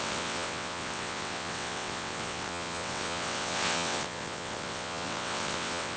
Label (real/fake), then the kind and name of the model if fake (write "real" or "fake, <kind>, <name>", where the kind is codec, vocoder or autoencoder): fake, vocoder, WaveNeXt